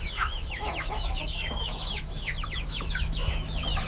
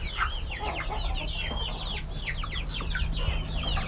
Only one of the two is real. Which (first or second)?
second